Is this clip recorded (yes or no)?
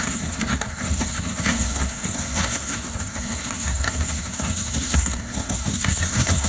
no